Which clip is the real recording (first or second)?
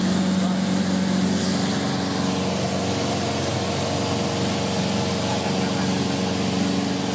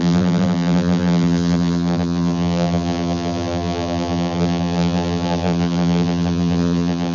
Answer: first